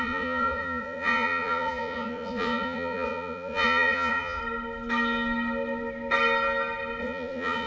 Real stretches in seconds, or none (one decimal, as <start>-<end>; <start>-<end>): 4.4-7.0